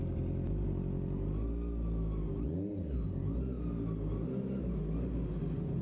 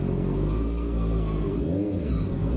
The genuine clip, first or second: first